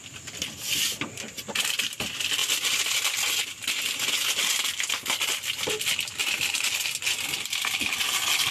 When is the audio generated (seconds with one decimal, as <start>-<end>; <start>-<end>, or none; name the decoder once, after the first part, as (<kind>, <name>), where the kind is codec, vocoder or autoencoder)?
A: none